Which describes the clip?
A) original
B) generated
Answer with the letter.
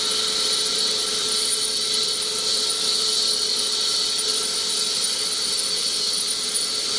B